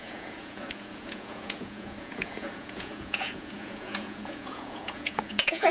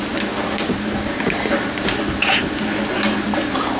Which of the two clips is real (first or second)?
second